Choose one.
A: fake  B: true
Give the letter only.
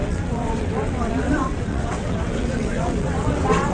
A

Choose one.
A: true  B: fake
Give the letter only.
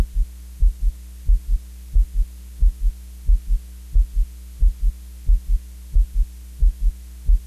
A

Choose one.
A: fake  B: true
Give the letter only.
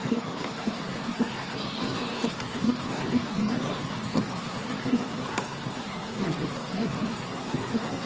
A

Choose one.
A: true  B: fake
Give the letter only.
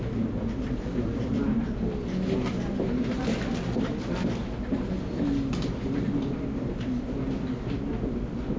A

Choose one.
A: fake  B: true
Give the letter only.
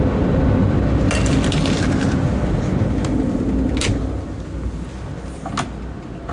B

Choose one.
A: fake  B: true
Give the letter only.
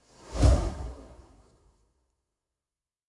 A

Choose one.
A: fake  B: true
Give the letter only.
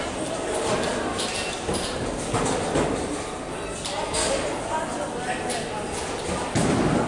B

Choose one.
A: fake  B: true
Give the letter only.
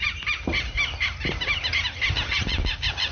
B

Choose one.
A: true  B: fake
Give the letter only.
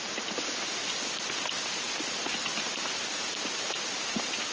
A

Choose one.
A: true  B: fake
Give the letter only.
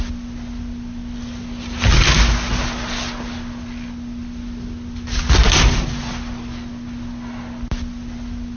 A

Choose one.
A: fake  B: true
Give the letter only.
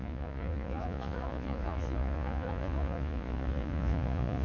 A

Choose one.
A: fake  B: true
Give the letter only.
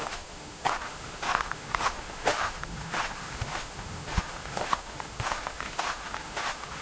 A